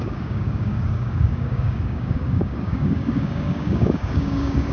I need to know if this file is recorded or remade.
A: remade